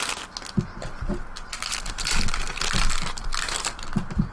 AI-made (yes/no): no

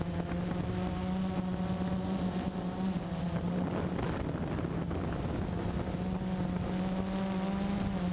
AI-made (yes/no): no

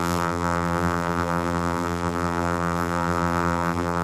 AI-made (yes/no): yes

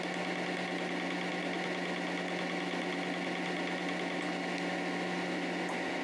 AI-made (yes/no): no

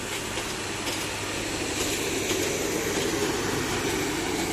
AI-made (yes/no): no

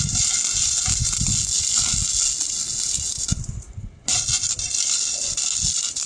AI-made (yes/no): no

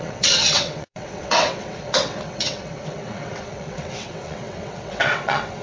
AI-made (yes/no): yes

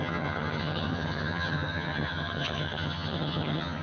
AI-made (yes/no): yes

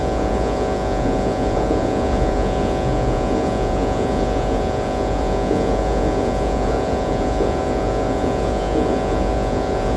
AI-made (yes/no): yes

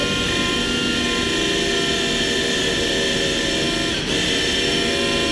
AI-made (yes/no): no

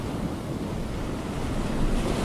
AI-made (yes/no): no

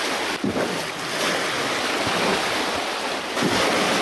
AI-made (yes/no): no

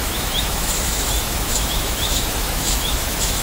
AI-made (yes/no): yes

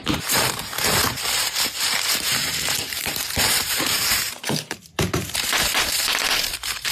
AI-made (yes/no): yes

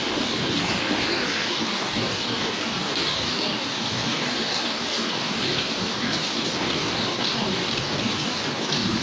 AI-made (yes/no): yes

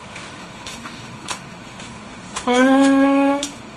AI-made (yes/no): yes